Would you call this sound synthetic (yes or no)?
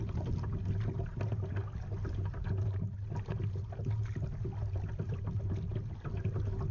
no